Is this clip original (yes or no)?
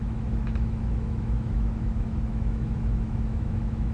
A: no